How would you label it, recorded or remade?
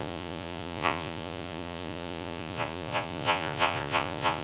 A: remade